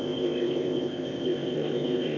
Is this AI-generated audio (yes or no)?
yes